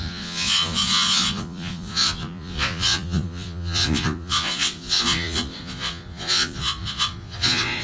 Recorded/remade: remade